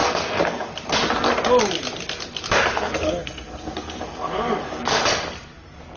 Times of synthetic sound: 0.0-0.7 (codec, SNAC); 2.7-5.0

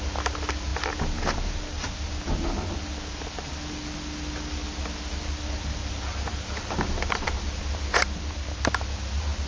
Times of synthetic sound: none

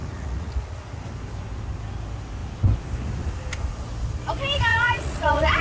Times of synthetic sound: 0.0-1.0 (vocoder, Vocos); 4.7-5.6

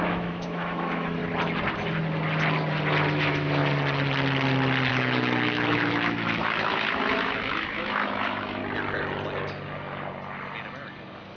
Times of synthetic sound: 0.0-1.2 (autoencoder, DAC-VAE); 3.2-3.6; 4.9-8.6

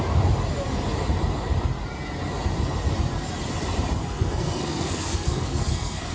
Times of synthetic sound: 4.0-6.1 (codec, SNAC)

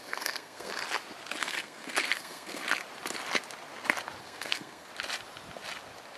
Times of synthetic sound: 0.0-0.7 (codec, SNAC); 1.4-2.6; 4.2-4.9

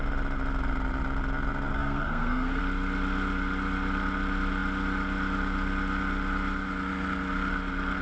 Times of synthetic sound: 1.7-2.6 (codec, SNAC)

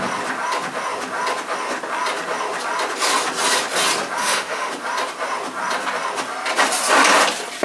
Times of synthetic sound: 4.2-4.7 (autoencoder, DAC-VAE)